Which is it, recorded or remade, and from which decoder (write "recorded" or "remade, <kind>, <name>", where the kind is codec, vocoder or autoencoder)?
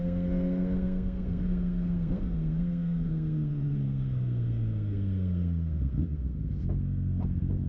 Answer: remade, codec, SNAC